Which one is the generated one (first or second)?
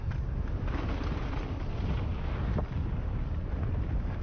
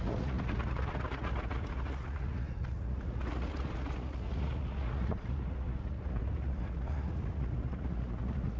second